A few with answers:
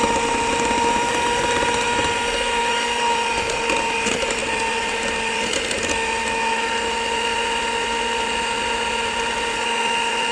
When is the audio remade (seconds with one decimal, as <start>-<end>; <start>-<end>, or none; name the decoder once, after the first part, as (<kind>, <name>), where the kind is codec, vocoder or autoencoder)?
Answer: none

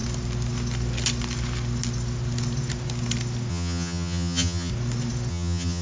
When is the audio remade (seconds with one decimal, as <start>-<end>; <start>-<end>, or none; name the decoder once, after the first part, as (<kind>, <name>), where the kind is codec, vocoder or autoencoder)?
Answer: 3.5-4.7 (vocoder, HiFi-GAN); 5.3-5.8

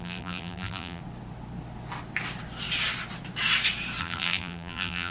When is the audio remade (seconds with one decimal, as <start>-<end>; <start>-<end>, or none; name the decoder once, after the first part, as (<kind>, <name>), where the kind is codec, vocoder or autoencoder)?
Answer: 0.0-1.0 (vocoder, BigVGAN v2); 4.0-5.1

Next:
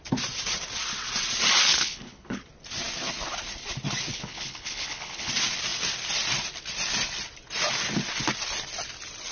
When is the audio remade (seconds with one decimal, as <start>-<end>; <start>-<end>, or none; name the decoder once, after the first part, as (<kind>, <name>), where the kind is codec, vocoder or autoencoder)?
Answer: 1.7-2.4 (codec, HILCodec); 4.1-5.3

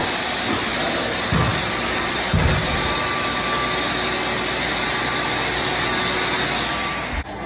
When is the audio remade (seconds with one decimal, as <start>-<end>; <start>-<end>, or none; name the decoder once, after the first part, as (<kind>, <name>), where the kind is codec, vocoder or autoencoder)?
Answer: none

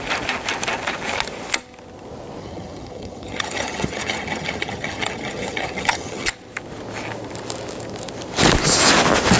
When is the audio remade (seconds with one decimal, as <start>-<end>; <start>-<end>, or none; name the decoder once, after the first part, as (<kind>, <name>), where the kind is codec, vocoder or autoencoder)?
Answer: 2.4-6.3 (vocoder, HiFi-GAN)

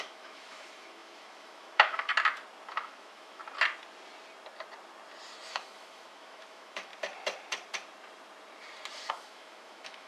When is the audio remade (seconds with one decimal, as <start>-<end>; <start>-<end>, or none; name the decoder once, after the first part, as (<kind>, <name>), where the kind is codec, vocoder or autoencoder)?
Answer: 0.0-2.1 (autoencoder, DAC-VAE); 2.7-3.4; 5.5-6.9; 9.1-10.1